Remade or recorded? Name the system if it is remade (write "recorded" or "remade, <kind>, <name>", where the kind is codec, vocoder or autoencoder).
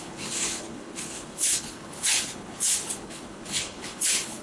remade, codec, HILCodec